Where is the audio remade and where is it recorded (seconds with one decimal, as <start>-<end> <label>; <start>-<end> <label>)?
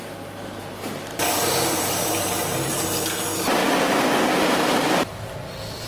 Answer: 0.0-0.6 remade; 0.6-1.1 recorded; 1.1-2.7 remade; 2.7-5.9 recorded